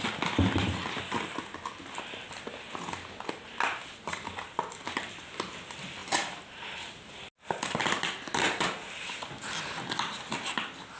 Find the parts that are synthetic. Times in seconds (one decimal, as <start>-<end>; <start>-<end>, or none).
none